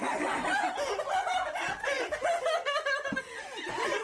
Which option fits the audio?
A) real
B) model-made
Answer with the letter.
A